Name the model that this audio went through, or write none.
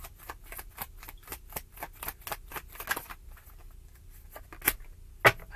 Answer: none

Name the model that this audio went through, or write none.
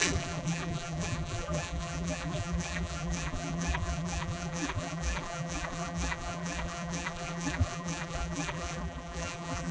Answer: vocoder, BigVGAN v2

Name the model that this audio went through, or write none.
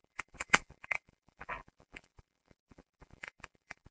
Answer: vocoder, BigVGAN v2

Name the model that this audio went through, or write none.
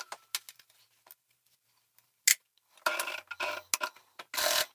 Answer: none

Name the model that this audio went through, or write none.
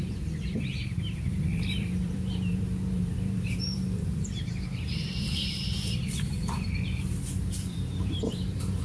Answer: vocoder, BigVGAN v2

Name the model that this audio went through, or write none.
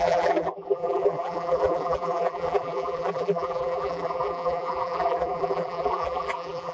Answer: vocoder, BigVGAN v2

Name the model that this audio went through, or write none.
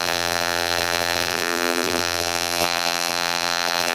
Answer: vocoder, BigVGAN v2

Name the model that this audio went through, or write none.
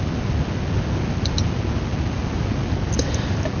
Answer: none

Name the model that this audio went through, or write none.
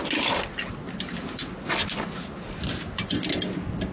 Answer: none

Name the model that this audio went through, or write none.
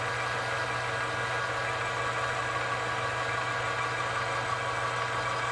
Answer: none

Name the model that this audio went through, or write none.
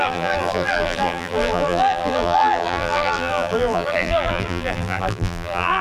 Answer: vocoder, BigVGAN v2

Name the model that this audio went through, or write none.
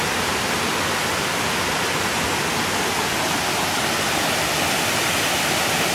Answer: none